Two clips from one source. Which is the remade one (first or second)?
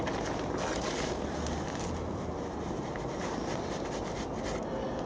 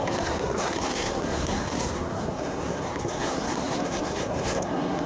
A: second